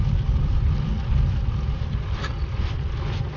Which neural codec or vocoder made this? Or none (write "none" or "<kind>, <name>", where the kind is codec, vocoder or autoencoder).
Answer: none